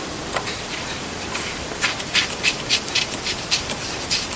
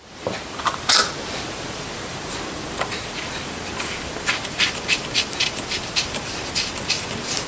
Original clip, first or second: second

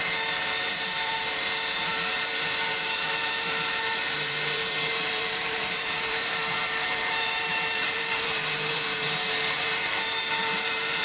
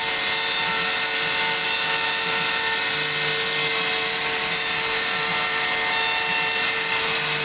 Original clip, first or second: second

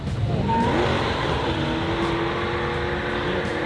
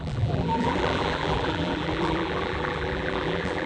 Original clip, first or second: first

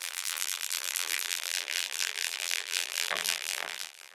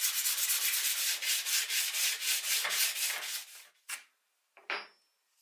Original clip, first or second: second